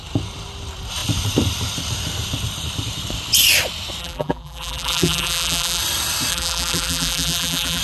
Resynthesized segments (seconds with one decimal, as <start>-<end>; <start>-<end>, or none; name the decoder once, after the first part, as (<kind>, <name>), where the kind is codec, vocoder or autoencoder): 4.0-5.8 (vocoder, BigVGAN v2); 6.3-7.8